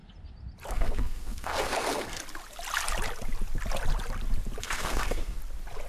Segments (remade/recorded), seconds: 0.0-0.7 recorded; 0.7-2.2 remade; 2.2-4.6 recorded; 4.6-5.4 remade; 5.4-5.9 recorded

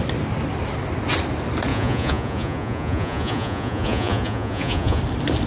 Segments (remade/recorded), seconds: 0.0-1.7 recorded; 1.7-5.0 remade; 5.0-5.5 recorded

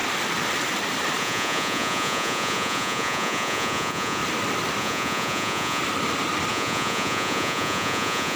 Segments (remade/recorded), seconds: 0.0-1.2 recorded; 1.2-4.2 remade; 4.2-4.8 recorded; 4.8-5.8 remade; 5.8-6.5 recorded; 6.5-8.4 remade

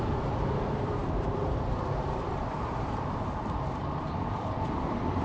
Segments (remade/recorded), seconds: 0.0-5.2 remade

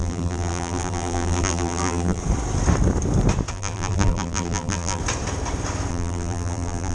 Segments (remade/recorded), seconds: 0.0-2.2 remade; 2.2-3.5 recorded; 3.5-5.0 remade; 5.0-5.9 recorded; 5.9-6.9 remade

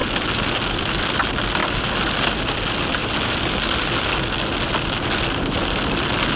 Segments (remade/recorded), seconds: 0.0-6.4 recorded